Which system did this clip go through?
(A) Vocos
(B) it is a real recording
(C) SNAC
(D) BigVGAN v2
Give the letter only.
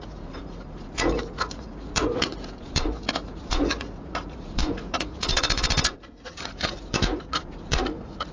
A